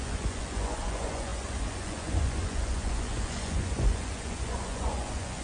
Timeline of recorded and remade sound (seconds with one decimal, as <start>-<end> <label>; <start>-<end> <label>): 0.0-5.4 remade